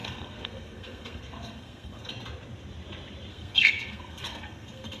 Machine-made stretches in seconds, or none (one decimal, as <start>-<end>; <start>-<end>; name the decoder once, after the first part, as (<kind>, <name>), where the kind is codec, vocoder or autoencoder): 0.0-2.1 (codec, SNAC); 3.3-5.0